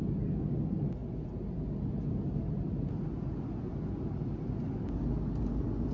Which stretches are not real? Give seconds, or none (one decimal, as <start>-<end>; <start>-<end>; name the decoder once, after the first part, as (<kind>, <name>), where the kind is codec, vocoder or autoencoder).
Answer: none